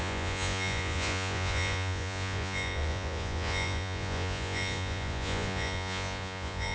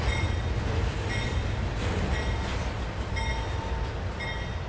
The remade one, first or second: first